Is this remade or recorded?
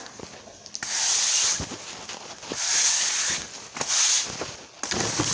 recorded